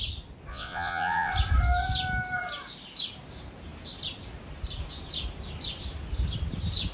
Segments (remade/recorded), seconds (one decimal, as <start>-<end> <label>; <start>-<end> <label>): 0.0-0.5 recorded; 0.5-1.3 remade; 1.3-6.9 recorded